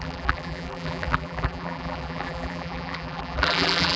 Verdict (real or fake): fake